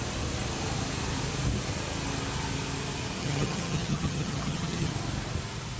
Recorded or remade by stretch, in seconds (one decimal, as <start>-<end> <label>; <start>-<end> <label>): 0.0-3.2 recorded; 3.2-4.9 remade; 4.9-5.8 recorded